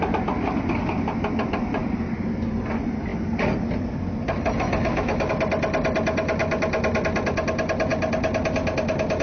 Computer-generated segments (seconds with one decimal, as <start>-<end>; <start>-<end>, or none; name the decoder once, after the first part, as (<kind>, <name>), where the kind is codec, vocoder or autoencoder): none